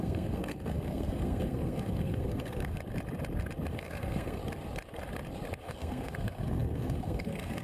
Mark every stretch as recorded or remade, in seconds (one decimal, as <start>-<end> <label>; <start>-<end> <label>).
0.0-2.8 remade; 2.8-3.7 recorded; 3.7-4.4 remade; 4.4-5.6 recorded; 5.6-7.6 remade